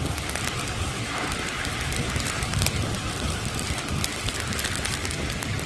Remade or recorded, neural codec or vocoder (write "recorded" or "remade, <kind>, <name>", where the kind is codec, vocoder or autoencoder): recorded